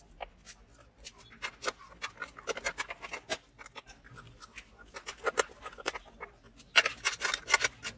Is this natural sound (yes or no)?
yes